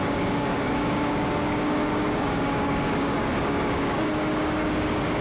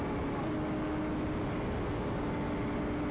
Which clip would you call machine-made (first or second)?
first